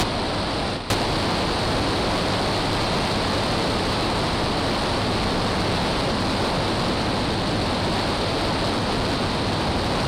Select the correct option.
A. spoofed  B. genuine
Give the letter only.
B